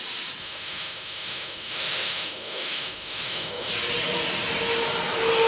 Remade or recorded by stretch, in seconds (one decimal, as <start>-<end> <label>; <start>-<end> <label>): 0.0-0.4 recorded; 0.4-3.7 remade; 3.7-5.5 recorded